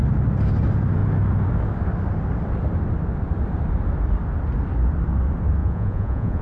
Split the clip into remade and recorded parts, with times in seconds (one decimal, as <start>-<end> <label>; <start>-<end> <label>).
0.0-5.6 recorded; 5.6-6.4 remade

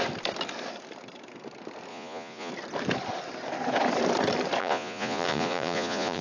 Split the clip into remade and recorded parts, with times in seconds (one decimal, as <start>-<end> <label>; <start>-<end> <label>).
0.0-1.9 recorded; 1.9-2.5 remade; 2.5-4.6 recorded; 4.6-6.2 remade

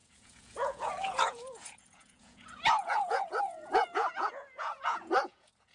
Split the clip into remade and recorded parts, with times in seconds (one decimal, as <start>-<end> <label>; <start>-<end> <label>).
0.0-5.7 remade

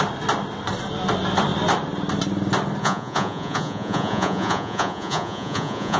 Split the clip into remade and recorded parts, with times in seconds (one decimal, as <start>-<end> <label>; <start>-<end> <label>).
0.0-2.8 recorded; 2.8-6.0 remade

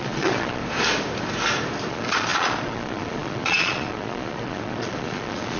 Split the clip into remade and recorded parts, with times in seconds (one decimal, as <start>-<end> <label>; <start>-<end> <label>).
0.0-0.6 remade; 0.6-1.9 recorded; 1.9-5.6 remade